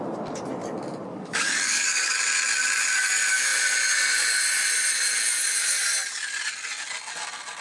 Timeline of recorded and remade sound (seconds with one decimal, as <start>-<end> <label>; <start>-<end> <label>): 0.0-1.1 recorded; 1.1-2.2 remade; 2.2-7.6 recorded